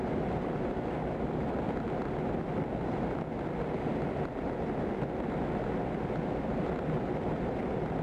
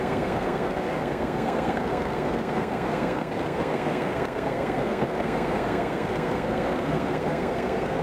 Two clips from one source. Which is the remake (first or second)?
second